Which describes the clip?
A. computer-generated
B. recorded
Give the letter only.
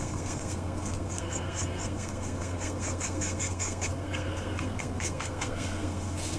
A